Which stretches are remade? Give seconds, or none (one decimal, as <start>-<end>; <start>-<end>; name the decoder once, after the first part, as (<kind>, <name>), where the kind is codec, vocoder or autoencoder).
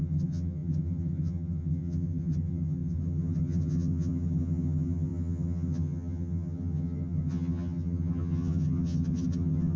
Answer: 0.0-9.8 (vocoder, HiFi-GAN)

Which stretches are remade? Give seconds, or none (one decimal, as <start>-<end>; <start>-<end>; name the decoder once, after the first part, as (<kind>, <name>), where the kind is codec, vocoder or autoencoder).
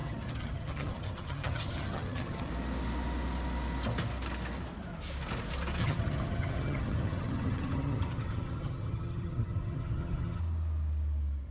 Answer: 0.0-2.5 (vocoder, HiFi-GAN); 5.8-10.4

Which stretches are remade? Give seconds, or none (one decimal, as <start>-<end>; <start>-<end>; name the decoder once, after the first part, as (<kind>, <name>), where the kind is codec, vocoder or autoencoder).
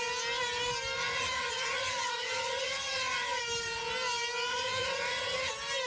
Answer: 1.0-3.4 (vocoder, HiFi-GAN); 4.5-5.5